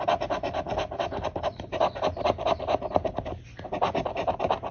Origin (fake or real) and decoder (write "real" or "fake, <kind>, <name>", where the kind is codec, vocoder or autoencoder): real